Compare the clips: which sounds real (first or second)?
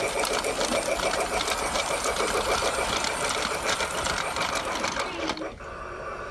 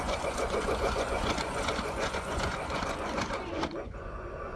first